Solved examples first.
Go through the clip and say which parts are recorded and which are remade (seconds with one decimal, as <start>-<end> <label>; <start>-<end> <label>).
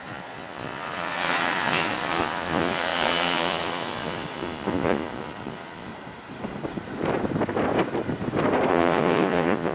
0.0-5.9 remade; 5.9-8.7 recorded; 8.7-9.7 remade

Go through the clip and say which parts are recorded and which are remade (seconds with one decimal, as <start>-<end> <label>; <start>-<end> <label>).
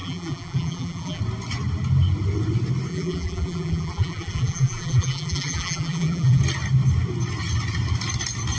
0.0-1.2 remade; 1.2-2.9 recorded; 2.9-6.4 remade; 6.4-8.6 recorded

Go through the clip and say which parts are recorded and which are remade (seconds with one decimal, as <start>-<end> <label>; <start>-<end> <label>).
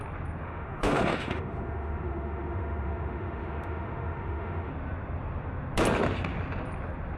0.0-0.4 recorded; 0.4-4.7 remade; 4.7-7.2 recorded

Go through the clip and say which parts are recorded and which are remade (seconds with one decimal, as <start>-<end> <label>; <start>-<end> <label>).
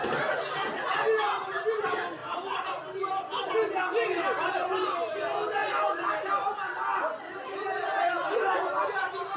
0.0-9.4 recorded